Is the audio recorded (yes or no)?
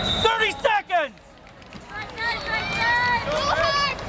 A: yes